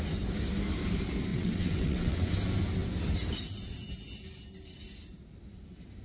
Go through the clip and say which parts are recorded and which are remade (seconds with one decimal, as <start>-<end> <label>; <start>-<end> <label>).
0.0-1.3 recorded; 1.3-2.3 remade; 2.3-6.0 recorded